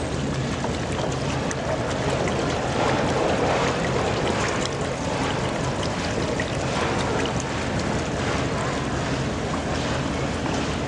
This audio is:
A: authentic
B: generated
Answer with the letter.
A